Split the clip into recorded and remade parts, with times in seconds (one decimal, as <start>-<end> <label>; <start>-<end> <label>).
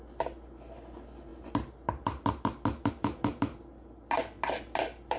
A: 0.0-5.2 recorded